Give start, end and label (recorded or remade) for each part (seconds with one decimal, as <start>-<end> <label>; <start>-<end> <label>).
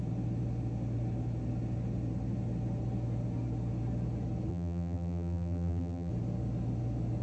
0.0-4.5 recorded; 4.5-6.1 remade; 6.1-7.2 recorded